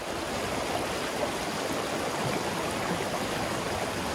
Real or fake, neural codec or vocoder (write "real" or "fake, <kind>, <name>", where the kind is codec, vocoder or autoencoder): real